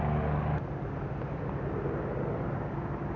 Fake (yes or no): no